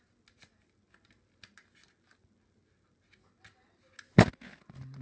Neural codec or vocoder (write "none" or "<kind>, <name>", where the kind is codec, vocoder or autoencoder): none